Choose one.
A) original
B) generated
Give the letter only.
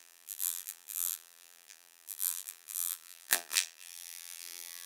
B